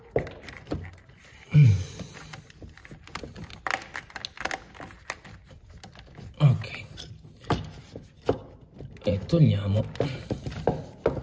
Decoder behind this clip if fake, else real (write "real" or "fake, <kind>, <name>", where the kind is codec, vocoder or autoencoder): real